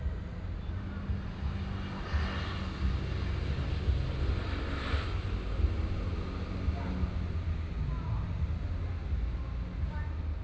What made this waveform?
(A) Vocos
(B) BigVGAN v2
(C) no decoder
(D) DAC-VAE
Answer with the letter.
C